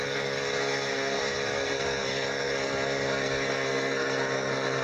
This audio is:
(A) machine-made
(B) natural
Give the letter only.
A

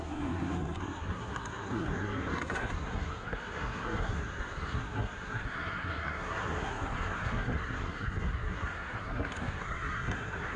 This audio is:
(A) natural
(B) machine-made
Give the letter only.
B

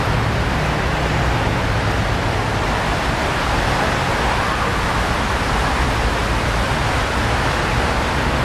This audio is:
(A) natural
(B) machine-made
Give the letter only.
A